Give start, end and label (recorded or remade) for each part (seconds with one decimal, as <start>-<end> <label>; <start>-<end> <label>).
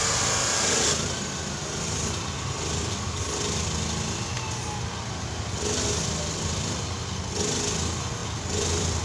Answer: 0.0-8.2 recorded; 8.2-9.0 remade